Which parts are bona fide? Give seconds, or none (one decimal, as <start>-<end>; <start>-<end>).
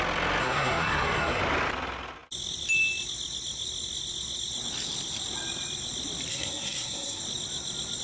0.0-0.4; 1.4-6.3; 7.2-8.0